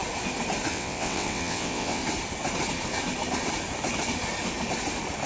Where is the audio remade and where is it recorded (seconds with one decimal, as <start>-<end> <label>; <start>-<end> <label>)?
0.0-0.7 recorded; 0.7-2.0 remade; 2.0-5.3 recorded